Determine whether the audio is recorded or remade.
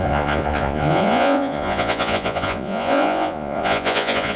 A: remade